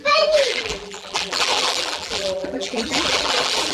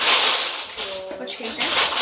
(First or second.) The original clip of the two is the second